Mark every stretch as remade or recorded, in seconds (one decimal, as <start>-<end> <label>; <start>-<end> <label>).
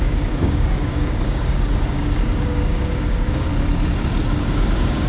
0.0-3.5 remade; 3.5-4.4 recorded; 4.4-5.1 remade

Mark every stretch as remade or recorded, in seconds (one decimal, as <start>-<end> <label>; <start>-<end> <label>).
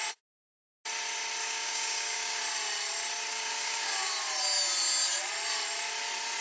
0.0-1.4 recorded; 1.4-2.4 remade; 2.4-3.3 recorded; 3.3-4.1 remade; 4.1-6.4 recorded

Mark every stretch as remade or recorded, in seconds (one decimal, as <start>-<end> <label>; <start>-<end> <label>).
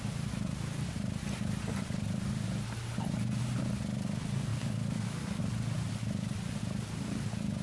0.0-4.5 recorded; 4.5-5.4 remade; 5.4-7.6 recorded